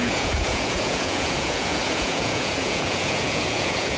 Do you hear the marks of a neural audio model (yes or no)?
yes